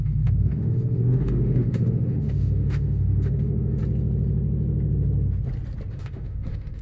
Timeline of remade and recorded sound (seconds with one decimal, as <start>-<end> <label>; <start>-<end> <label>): 0.0-3.8 remade; 3.8-5.9 recorded; 5.9-6.8 remade